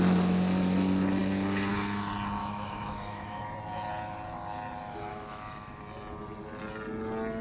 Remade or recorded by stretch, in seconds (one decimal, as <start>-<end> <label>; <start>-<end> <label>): 0.0-2.4 recorded; 2.4-3.4 remade; 3.4-5.1 recorded; 5.1-5.8 remade; 5.8-7.4 recorded